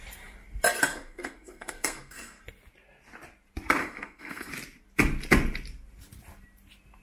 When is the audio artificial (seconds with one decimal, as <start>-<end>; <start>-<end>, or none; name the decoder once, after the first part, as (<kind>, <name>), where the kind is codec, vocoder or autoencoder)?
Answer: 0.9-2.4 (codec, SNAC); 3.8-4.5